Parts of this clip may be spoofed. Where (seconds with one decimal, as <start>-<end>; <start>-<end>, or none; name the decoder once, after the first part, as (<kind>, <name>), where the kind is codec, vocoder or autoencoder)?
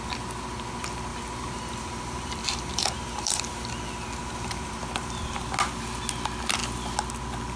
1.1-3.4 (vocoder, BigVGAN v2); 4.2-4.8